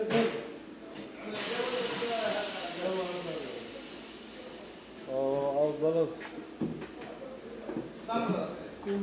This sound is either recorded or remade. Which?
recorded